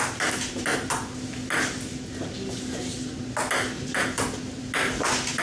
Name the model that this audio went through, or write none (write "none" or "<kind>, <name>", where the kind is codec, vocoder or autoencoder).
none